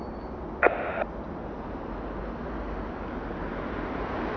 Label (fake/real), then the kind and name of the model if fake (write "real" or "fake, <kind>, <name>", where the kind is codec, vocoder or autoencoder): real